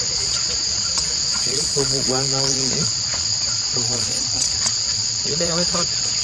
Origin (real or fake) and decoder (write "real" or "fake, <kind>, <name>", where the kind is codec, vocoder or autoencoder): fake, vocoder, Vocos